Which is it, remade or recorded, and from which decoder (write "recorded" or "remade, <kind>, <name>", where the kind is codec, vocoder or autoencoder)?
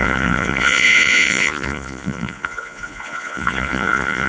remade, vocoder, Vocos